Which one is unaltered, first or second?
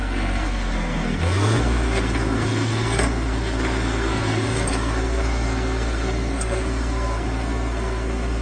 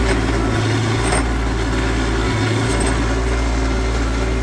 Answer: second